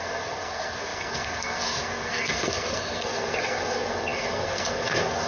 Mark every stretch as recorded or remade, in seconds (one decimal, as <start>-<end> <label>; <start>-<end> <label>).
0.0-5.3 remade